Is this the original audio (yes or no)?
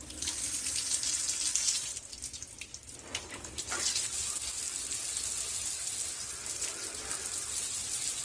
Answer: yes